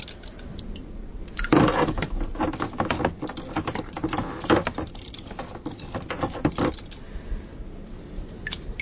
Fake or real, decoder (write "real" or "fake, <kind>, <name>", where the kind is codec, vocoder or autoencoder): real